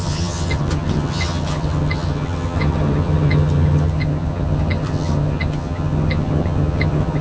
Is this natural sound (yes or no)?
no